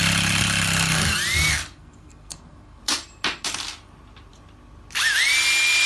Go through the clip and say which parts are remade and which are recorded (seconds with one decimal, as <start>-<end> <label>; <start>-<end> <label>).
0.0-1.5 recorded; 1.5-2.8 remade; 2.8-5.9 recorded